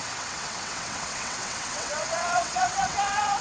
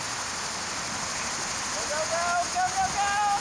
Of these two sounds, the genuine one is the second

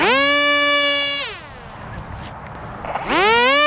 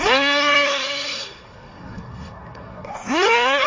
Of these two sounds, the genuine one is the first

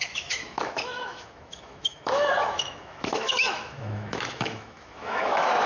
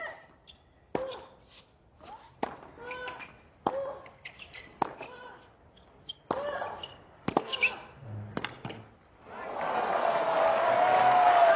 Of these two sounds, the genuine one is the second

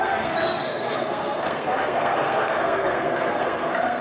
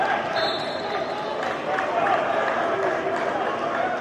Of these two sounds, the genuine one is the second